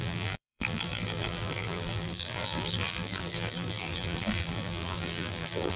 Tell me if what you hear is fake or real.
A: fake